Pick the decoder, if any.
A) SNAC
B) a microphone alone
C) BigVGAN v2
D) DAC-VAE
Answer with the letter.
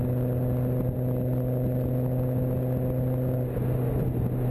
B